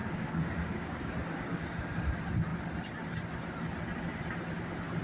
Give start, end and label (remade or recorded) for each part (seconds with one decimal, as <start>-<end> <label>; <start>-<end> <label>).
0.0-2.1 remade; 2.1-5.0 recorded

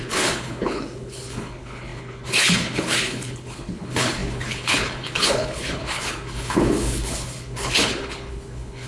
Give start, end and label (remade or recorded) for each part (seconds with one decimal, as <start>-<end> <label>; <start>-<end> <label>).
0.0-8.9 remade

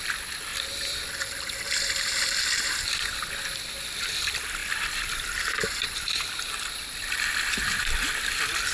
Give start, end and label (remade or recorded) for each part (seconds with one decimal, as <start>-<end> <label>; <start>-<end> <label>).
0.0-0.5 recorded; 0.5-3.7 remade; 3.7-4.6 recorded; 4.6-7.2 remade; 7.2-8.7 recorded

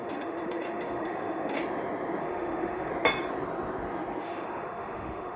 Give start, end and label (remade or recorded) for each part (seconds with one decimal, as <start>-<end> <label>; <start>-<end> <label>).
0.0-1.6 remade; 1.6-2.2 recorded; 2.2-2.9 remade; 2.9-4.2 recorded; 4.2-5.4 remade

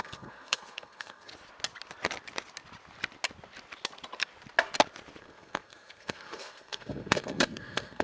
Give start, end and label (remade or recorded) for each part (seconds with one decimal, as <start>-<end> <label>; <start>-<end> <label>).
0.0-1.3 remade; 1.3-5.2 recorded; 5.2-8.0 remade

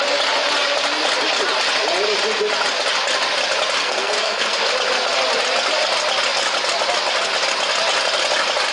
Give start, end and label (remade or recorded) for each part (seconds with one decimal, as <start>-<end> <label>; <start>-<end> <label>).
0.0-3.8 recorded; 3.8-4.7 remade; 4.7-8.7 recorded

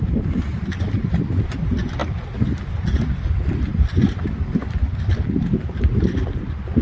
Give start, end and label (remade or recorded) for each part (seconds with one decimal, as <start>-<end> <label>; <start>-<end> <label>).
0.0-6.8 recorded

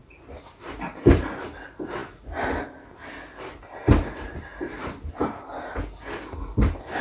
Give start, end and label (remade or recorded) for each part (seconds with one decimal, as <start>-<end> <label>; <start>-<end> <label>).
0.0-4.5 recorded; 4.5-5.8 remade; 5.8-7.0 recorded